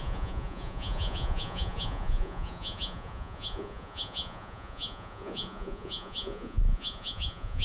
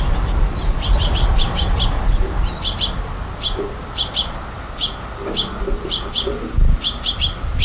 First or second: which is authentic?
second